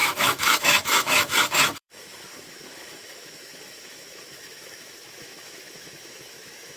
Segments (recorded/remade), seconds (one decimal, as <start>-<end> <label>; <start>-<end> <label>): 0.0-6.8 remade

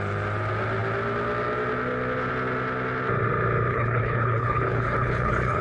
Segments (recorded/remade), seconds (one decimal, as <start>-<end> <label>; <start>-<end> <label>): 0.0-3.7 recorded; 3.7-5.6 remade